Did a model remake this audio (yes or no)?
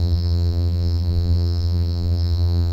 yes